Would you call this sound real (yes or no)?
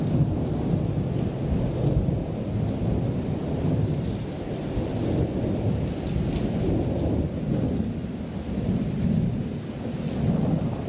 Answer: yes